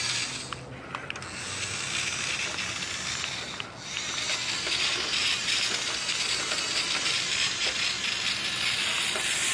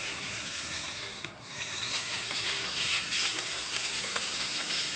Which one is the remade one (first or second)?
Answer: second